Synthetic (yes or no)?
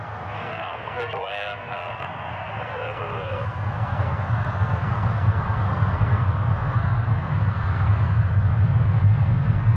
yes